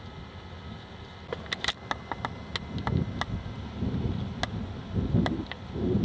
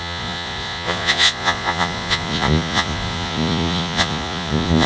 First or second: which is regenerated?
second